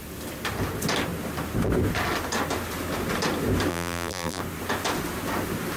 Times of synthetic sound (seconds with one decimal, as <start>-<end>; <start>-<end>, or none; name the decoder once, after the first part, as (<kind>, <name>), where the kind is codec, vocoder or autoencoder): 3.7-4.4 (vocoder, BigVGAN v2)